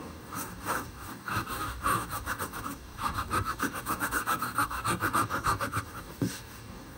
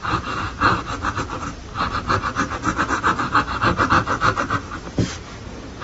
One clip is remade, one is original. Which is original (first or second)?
second